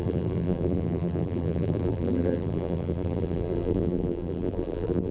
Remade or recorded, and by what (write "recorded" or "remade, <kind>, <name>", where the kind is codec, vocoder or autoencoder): remade, vocoder, BigVGAN v2